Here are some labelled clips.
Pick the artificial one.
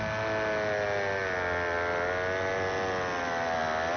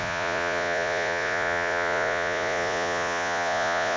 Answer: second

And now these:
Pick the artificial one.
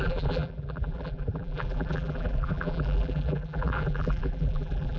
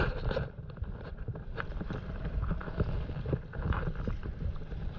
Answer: first